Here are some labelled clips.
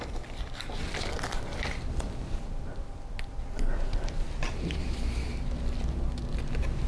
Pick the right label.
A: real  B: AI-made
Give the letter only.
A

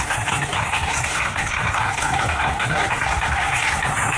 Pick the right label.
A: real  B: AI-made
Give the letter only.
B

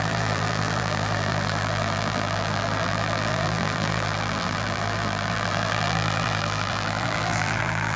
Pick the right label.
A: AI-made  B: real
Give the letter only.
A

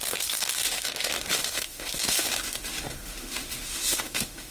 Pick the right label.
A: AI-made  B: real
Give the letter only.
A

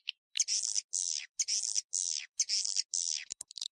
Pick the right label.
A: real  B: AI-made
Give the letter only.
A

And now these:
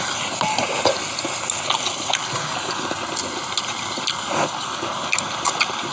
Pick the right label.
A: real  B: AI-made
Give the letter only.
A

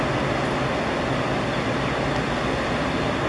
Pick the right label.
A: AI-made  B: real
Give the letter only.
B